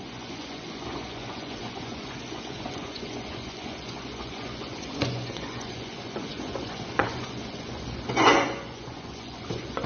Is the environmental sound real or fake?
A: fake